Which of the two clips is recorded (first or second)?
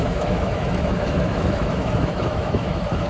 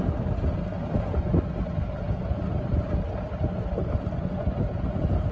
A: second